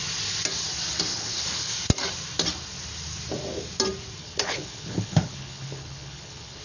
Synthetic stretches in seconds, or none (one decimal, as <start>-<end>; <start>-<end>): 1.1-1.7; 4.2-6.6